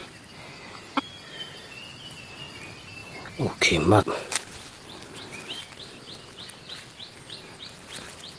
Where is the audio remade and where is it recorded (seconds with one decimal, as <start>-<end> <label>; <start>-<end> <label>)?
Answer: 0.0-3.0 recorded; 3.0-4.0 remade; 4.0-8.4 recorded